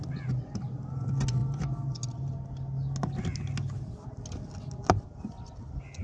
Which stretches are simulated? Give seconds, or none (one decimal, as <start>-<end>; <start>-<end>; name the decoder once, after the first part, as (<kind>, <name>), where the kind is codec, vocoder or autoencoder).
none